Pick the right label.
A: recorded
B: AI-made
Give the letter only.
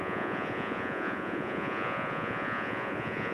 B